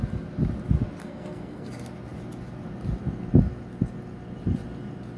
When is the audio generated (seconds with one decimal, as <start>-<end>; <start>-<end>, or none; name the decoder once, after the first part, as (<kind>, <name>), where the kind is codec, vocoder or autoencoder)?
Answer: 1.0-1.7 (codec, SNAC)